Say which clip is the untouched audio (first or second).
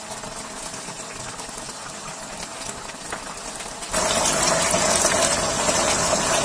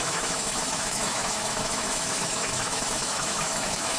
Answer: first